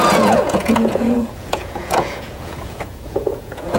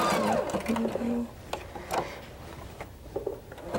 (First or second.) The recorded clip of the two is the second